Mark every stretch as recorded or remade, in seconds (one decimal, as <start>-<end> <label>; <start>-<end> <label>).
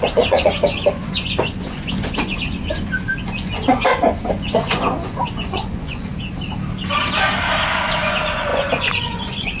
0.0-6.1 remade; 6.1-8.0 recorded; 8.0-9.6 remade